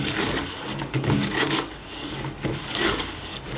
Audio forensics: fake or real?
fake